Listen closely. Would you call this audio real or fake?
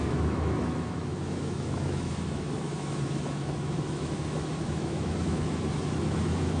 fake